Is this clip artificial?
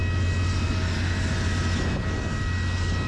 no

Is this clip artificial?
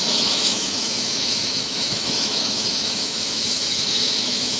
yes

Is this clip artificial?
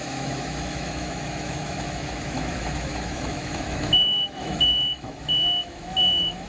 yes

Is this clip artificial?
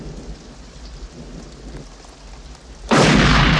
no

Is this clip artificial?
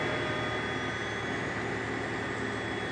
no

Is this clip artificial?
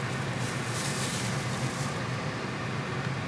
no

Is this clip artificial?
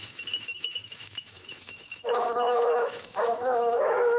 yes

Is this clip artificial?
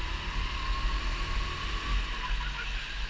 no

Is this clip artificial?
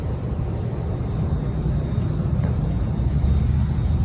no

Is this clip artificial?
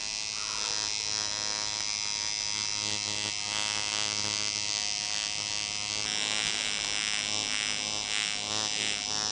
no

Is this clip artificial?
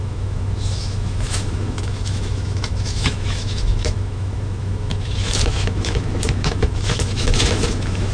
yes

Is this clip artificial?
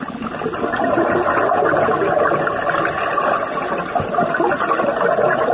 no